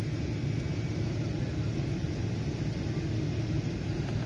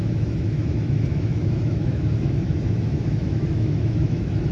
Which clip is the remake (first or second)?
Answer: second